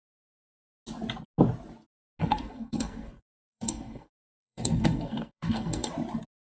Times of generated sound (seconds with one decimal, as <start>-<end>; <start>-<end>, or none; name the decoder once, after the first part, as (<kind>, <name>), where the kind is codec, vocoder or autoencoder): 2.2-5.9 (codec, SNAC)